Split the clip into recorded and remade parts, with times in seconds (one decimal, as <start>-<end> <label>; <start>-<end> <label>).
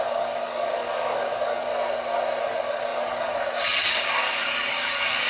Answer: 0.0-1.7 remade; 1.7-2.4 recorded; 2.4-5.3 remade